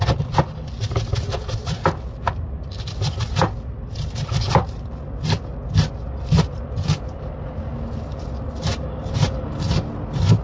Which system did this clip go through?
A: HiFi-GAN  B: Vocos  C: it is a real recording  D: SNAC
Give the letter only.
C